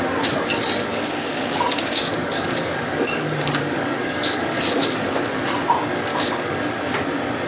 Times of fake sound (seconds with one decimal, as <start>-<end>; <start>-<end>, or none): 0.9-5.4; 6.1-6.6